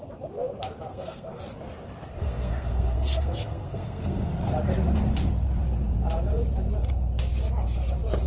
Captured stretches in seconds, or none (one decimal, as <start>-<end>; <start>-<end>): 0.0-0.9; 1.4-2.2; 4.3-8.3